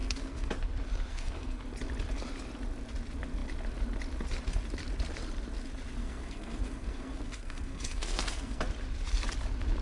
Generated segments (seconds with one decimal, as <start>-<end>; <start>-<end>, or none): 0.0-0.5; 1.1-1.6; 6.0-8.6